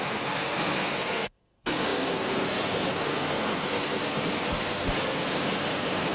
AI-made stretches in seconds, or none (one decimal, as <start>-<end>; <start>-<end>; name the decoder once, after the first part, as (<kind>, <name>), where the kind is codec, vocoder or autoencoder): 0.0-6.1 (codec, SNAC)